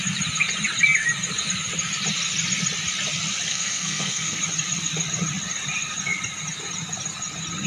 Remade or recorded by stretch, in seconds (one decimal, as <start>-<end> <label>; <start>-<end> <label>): 0.0-3.5 recorded; 3.5-4.4 remade; 4.4-7.7 recorded